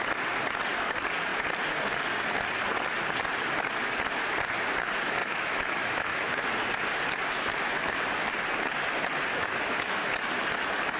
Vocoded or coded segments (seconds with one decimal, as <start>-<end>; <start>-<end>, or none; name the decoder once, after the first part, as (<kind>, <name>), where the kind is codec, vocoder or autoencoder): 5.2-6.4 (autoencoder, DAC-VAE); 9.3-10.0